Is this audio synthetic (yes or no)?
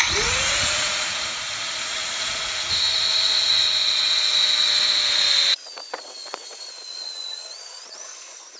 yes